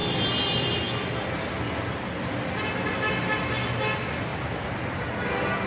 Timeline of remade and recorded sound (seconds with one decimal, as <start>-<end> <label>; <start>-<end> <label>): 0.0-5.7 recorded